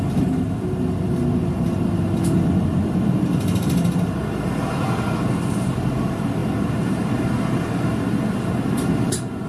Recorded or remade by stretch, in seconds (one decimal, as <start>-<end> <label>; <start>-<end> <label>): 0.0-9.5 recorded